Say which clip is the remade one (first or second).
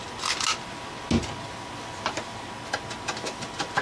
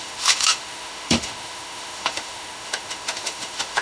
second